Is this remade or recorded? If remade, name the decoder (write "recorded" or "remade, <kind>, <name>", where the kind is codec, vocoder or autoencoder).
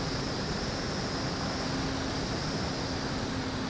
recorded